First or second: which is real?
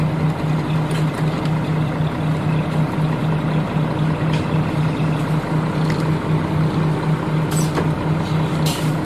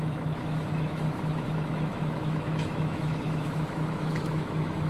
first